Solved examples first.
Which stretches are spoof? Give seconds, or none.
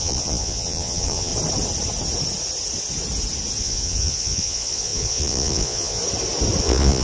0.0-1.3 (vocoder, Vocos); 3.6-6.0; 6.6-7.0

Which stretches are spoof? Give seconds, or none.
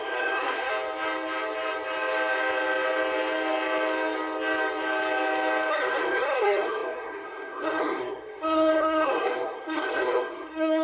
0.0-0.7 (codec, SNAC); 5.7-10.8